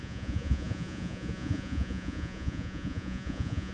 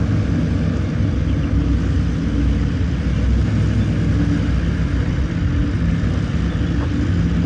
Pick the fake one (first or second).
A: first